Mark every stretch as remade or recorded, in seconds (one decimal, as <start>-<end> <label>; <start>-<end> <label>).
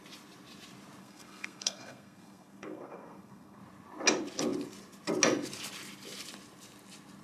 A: 0.0-1.0 recorded; 1.0-3.6 remade; 3.6-7.2 recorded